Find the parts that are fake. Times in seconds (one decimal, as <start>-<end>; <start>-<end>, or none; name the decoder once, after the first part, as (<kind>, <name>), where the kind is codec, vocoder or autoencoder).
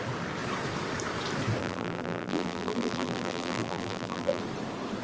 1.6-4.4 (vocoder, BigVGAN v2)